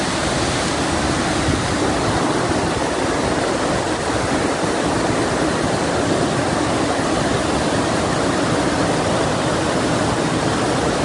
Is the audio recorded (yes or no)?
yes